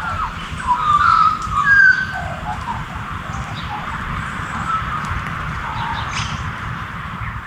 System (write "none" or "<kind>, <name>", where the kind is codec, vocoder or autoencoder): vocoder, BigVGAN v2